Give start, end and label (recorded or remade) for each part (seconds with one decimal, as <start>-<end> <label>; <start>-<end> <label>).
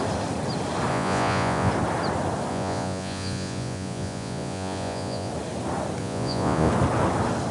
0.0-0.9 recorded; 0.9-1.7 remade; 1.7-2.5 recorded; 2.5-5.3 remade; 5.3-6.0 recorded; 6.0-6.7 remade; 6.7-7.5 recorded